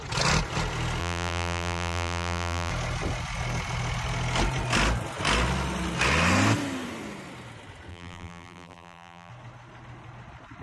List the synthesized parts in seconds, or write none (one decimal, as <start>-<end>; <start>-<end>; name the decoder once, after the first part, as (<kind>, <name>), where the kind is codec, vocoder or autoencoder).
1.0-2.7 (vocoder, BigVGAN v2); 7.9-9.3